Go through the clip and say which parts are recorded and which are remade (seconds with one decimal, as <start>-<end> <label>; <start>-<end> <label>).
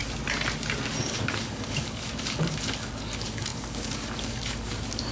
0.0-1.0 recorded; 1.0-5.1 remade